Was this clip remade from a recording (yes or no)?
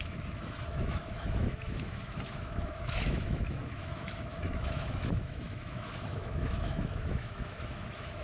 yes